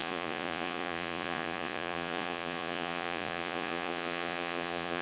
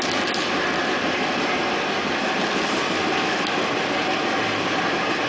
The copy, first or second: first